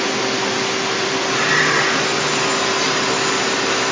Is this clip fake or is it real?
real